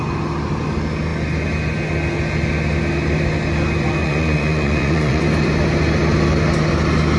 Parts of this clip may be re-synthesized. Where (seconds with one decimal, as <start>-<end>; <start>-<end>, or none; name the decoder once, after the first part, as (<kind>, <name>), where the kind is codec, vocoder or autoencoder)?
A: 4.0-5.2 (vocoder, Vocos)